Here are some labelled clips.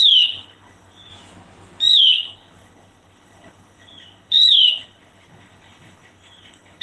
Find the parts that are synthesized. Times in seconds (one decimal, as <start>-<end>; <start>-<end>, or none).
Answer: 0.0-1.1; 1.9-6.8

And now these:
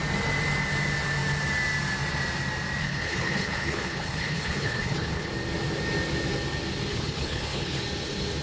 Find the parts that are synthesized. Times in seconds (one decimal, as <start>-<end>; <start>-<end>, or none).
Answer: 2.8-5.3; 6.9-7.8

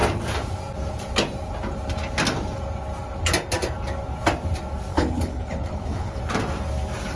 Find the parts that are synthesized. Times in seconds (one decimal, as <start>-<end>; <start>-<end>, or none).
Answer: 4.9-6.2

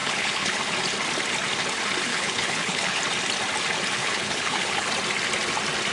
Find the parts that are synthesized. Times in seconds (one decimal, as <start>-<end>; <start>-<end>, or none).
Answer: 0.0-0.6; 2.1-3.0; 4.0-4.9

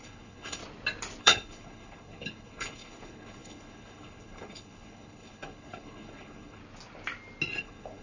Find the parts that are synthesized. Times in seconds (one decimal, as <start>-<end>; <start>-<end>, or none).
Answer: 0.0-0.6; 1.2-6.6; 7.6-8.0